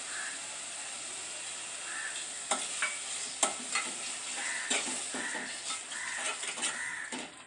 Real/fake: real